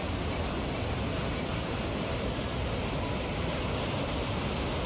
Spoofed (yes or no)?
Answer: no